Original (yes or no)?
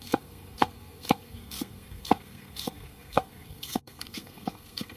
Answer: no